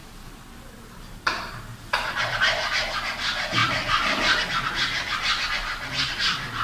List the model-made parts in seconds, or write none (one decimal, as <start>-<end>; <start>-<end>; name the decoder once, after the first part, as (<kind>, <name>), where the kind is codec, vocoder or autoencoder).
none